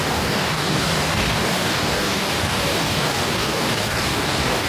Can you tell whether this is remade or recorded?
remade